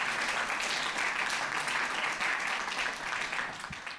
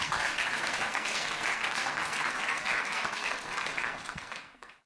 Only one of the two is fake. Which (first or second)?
second